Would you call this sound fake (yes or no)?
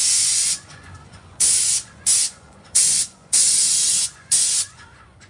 yes